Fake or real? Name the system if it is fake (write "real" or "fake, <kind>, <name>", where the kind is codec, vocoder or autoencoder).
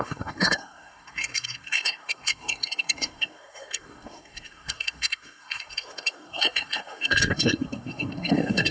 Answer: fake, codec, SNAC